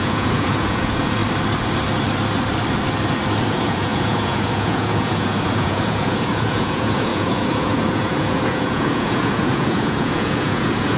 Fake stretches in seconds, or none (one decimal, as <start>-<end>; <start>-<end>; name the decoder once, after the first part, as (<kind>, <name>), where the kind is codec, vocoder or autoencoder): 0.0-1.2 (vocoder, Vocos); 3.5-11.0